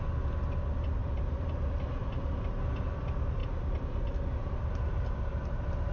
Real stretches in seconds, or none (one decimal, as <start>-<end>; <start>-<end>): 0.0-1.0; 1.5-3.4; 4.6-5.9